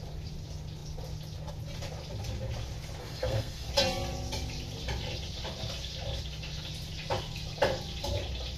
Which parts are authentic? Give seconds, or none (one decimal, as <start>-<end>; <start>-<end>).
0.0-3.0; 3.7-8.6